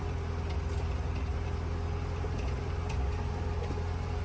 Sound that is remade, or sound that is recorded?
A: recorded